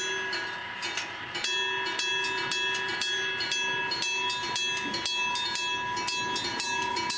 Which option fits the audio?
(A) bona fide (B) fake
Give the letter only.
A